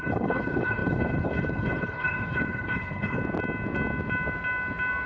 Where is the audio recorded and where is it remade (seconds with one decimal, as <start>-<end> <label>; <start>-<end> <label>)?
0.0-3.2 remade; 3.2-5.1 recorded